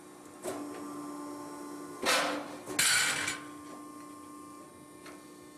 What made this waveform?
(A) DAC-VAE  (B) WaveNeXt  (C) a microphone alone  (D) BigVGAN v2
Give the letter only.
C